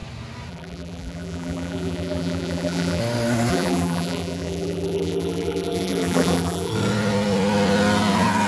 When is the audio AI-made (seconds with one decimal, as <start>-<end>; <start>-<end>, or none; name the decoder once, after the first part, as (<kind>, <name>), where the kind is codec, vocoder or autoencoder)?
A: 0.5-3.0 (vocoder, BigVGAN v2); 3.5-6.7